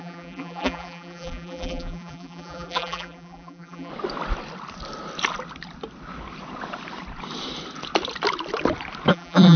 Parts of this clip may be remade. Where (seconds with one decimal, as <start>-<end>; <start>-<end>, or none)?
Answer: 0.0-3.9; 9.1-9.6